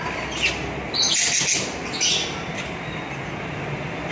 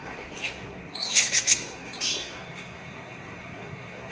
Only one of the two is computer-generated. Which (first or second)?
second